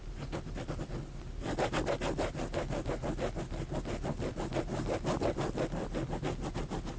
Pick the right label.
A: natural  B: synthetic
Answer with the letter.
A